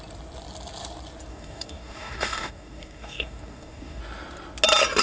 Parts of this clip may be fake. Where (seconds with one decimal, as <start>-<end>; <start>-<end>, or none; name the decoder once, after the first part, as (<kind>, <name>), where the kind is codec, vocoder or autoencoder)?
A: 1.3-4.0 (codec, DAC)

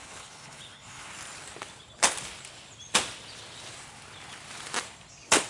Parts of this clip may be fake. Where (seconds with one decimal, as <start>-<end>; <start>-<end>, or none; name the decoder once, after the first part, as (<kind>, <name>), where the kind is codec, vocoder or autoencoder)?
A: 0.0-1.1 (codec, HILCodec)